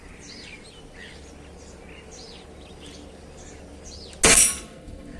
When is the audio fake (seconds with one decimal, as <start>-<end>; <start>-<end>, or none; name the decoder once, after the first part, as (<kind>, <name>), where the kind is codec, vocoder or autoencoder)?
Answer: 4.3-5.2 (codec, SNAC)